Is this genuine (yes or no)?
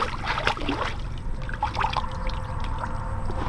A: yes